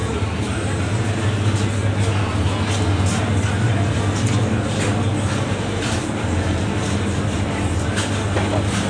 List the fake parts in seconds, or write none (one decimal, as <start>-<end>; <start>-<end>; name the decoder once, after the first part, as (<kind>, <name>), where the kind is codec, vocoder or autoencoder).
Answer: none